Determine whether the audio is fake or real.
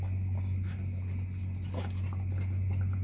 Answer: real